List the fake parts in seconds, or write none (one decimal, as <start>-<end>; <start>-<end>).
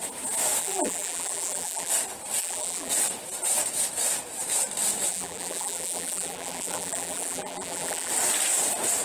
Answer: 0.6-1.9; 2.4-2.9; 5.1-8.1